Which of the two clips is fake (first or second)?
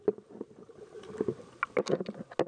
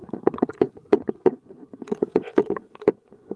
second